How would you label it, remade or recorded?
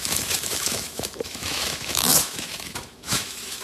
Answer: remade